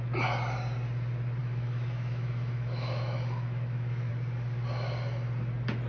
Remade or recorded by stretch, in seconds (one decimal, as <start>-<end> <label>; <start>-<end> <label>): 0.0-1.4 recorded; 1.4-4.1 remade; 4.1-5.9 recorded